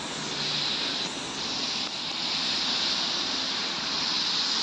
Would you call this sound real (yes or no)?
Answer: yes